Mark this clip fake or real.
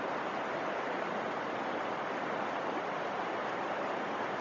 real